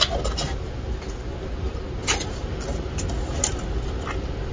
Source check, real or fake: real